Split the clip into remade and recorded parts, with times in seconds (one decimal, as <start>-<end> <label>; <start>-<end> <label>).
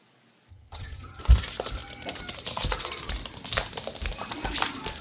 0.0-0.5 recorded; 0.5-1.2 remade; 1.2-5.0 recorded